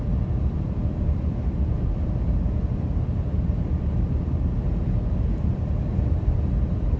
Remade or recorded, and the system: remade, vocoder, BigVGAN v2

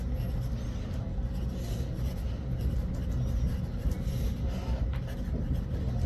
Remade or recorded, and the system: recorded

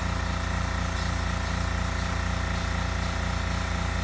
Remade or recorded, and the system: recorded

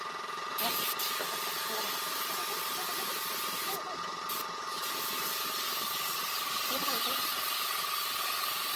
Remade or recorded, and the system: recorded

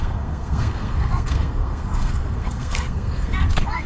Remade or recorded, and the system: remade, codec, SNAC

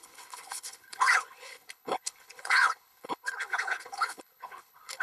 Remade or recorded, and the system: remade, codec, HILCodec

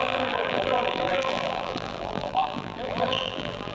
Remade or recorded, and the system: remade, vocoder, BigVGAN v2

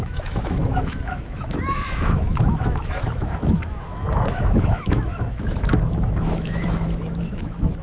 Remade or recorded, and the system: remade, autoencoder, DAC-VAE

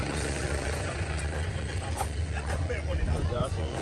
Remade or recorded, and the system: remade, vocoder, Vocos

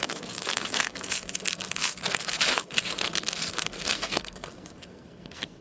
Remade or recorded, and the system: remade, codec, SNAC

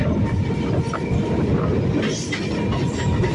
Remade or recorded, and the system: recorded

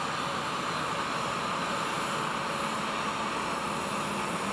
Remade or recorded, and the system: recorded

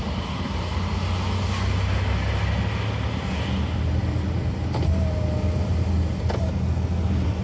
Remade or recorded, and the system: recorded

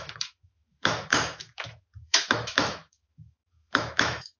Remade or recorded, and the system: remade, autoencoder, DAC-VAE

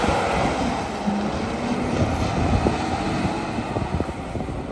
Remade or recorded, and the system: recorded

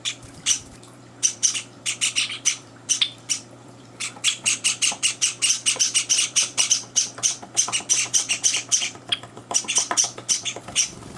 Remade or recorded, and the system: remade, vocoder, BigVGAN v2